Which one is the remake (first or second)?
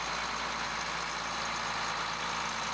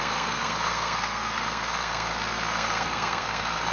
second